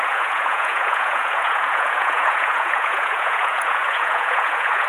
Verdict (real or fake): fake